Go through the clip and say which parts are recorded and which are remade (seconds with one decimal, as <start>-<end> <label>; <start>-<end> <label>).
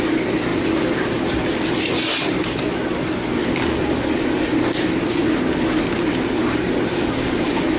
0.0-7.8 recorded